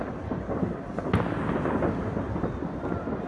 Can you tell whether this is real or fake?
real